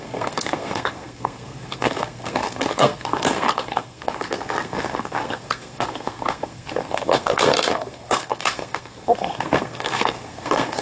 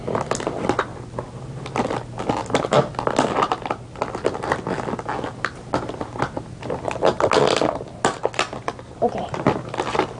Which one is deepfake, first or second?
first